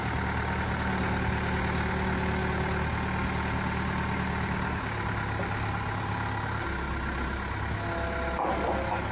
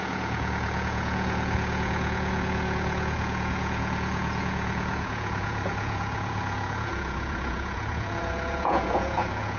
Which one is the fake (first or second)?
second